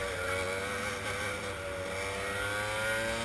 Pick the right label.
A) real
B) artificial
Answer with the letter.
A